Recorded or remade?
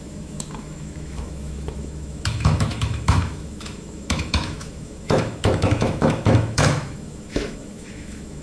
remade